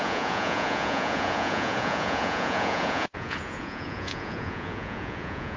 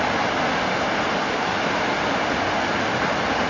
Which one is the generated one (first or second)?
first